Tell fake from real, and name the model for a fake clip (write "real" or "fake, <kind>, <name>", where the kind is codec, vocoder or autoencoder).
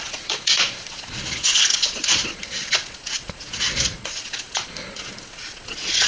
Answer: fake, vocoder, Vocos